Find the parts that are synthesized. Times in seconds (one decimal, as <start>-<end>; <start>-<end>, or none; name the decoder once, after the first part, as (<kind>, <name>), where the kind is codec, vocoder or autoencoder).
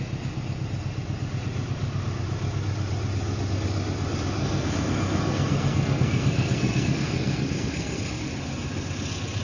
4.4-8.2 (codec, SNAC)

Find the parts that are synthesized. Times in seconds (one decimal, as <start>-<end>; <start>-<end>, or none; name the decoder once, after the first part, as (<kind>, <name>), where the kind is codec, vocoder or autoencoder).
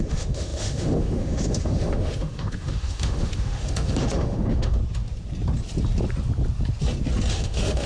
0.0-4.8 (autoencoder, DAC-VAE); 7.3-7.9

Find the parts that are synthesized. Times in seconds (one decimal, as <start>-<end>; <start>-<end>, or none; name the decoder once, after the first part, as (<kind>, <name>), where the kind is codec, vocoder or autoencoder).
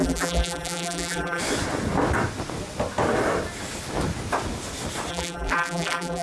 0.0-1.4 (vocoder, BigVGAN v2); 5.1-6.2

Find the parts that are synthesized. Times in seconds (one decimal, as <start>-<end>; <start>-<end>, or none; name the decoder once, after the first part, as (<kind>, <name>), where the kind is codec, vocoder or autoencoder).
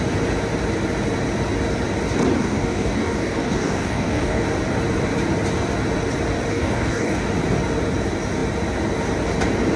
2.4-4.4 (codec, DAC); 6.5-7.3